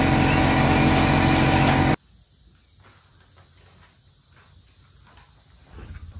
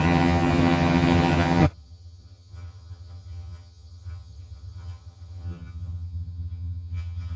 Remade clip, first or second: second